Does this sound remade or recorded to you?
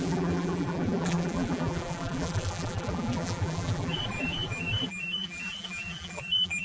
remade